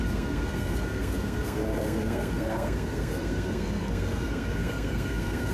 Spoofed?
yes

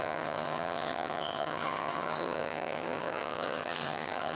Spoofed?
yes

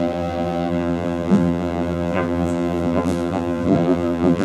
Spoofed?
yes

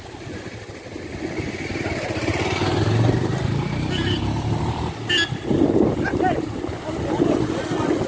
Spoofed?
no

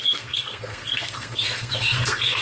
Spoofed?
yes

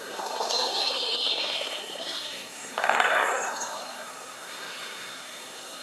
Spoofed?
yes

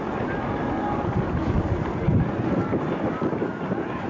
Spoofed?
no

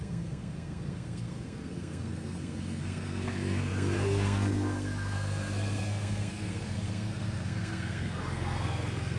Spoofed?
yes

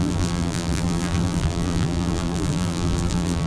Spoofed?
yes